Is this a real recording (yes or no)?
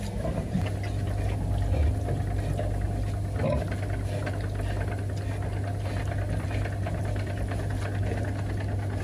yes